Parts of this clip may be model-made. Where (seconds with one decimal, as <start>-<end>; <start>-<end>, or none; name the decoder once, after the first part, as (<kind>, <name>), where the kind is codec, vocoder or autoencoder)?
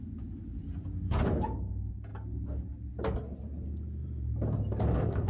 0.6-1.2 (vocoder, BigVGAN v2); 4.0-5.3